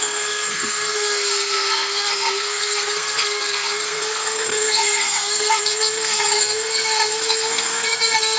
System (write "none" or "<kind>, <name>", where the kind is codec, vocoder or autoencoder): codec, SNAC